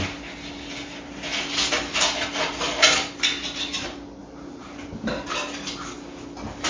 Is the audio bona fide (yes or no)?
yes